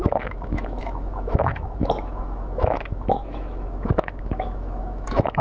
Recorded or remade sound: remade